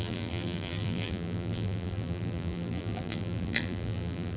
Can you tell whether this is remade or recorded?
remade